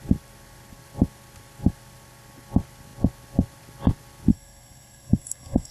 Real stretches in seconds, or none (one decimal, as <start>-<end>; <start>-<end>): 0.0-4.3